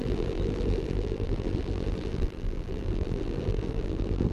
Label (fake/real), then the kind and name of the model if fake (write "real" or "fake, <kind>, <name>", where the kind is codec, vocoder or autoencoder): fake, vocoder, BigVGAN v2